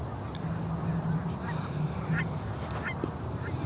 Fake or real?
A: real